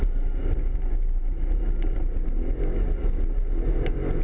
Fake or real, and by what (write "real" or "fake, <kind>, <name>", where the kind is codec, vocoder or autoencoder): real